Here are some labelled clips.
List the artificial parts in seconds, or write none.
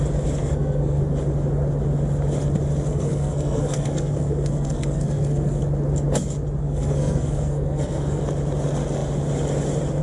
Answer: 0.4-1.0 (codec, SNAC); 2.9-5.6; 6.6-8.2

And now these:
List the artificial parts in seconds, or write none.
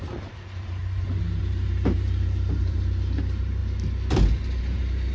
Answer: 0.0-0.8 (vocoder, BigVGAN v2); 1.4-3.6; 4.6-5.1